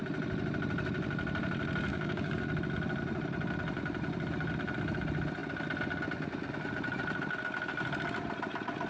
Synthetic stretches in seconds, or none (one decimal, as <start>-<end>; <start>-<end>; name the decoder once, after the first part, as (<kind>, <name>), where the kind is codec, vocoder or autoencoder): 1.9-2.4 (codec, DAC)